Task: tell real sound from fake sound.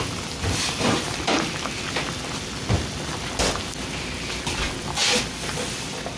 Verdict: real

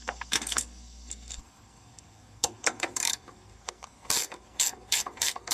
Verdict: fake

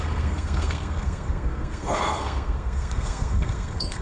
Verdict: fake